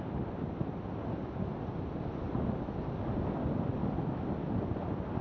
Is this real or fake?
real